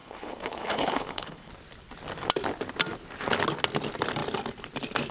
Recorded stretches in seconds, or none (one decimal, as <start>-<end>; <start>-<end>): 1.5-5.1